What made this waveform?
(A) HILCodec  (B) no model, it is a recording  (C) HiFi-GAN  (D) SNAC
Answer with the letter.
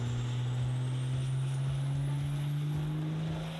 B